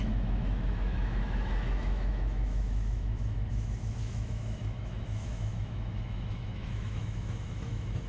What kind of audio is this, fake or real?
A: fake